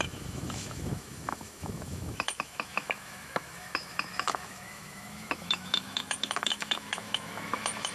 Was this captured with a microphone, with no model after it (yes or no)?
no